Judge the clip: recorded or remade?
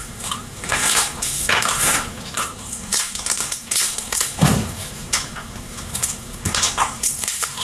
remade